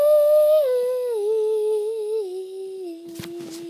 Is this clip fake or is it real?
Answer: real